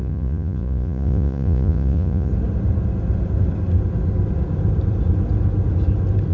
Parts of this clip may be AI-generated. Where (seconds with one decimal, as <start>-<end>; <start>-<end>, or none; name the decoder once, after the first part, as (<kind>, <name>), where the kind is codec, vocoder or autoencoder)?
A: 0.0-2.3 (vocoder, Vocos)

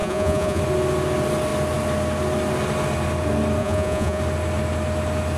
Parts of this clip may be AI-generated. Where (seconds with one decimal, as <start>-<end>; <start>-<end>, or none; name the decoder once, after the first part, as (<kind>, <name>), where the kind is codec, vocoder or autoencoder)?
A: 0.0-0.6 (vocoder, Vocos); 3.6-4.2

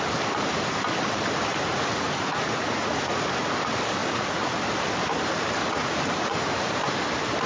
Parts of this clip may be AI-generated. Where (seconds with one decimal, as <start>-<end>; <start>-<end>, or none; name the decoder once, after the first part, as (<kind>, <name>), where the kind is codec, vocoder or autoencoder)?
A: 1.7-3.2 (vocoder, Vocos); 4.0-4.6; 5.6-6.7